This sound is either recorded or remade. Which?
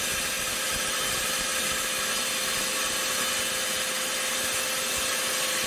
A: recorded